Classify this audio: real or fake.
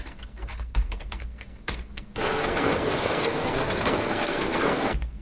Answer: fake